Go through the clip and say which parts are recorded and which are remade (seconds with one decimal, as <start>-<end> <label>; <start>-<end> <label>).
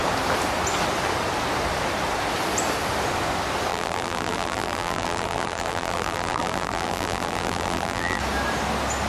0.0-3.7 recorded; 3.7-8.2 remade; 8.2-9.1 recorded